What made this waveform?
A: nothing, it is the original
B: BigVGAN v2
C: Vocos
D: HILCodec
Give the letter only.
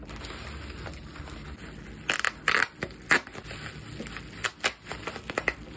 A